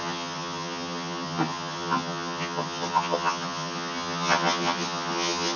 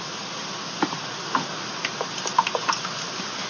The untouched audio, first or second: second